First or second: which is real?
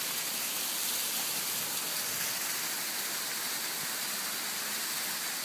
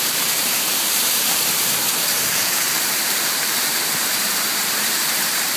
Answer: first